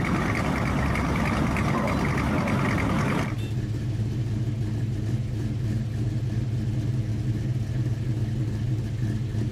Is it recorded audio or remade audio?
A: recorded